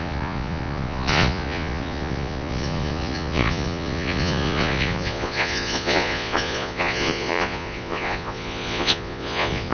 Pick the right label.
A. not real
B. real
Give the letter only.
A